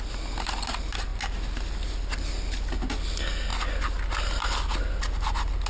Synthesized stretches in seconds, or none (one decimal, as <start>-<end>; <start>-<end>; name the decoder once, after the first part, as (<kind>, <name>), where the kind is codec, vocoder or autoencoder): none